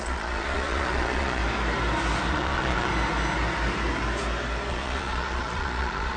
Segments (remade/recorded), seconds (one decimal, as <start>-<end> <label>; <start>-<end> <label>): 0.0-1.4 remade; 1.4-2.3 recorded; 2.3-2.9 remade; 2.9-4.7 recorded; 4.7-6.2 remade